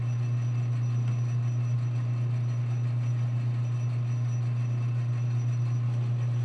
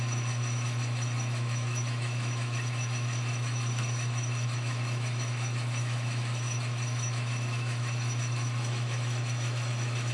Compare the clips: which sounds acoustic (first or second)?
first